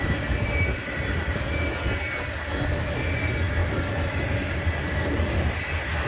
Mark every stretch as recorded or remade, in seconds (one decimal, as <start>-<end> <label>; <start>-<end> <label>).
0.0-6.1 recorded